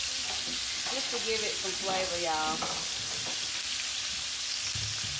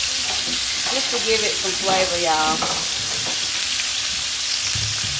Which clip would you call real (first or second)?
first